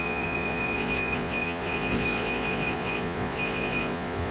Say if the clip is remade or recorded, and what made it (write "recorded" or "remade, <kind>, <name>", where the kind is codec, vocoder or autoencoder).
remade, vocoder, Vocos